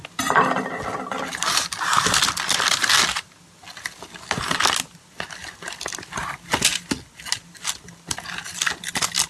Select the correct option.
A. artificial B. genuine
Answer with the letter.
B